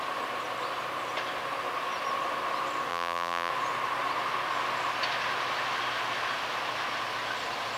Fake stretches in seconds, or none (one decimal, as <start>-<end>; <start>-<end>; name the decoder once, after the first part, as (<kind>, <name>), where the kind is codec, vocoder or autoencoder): 2.9-3.5 (vocoder, BigVGAN v2)